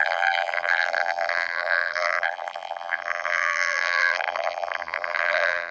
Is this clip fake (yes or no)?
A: yes